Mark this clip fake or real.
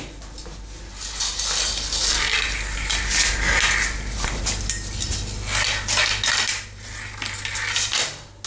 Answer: real